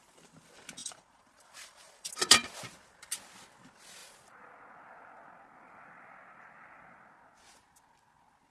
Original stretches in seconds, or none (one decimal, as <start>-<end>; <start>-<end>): 0.0-0.8; 2.1-8.5